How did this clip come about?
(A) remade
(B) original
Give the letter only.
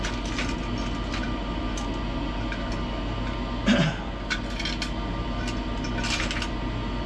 B